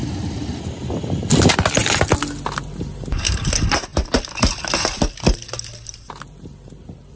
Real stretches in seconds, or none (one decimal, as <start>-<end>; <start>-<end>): 0.0-3.9; 5.1-7.2